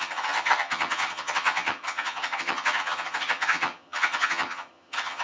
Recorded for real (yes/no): no